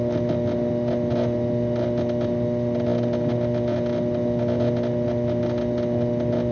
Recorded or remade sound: recorded